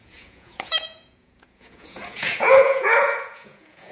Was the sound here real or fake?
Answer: fake